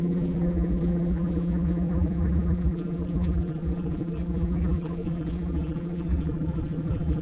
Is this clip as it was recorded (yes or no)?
no